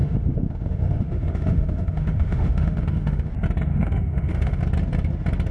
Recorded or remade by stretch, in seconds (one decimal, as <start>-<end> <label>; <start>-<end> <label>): 0.0-3.3 remade; 3.3-3.7 recorded; 3.7-4.6 remade; 4.6-5.5 recorded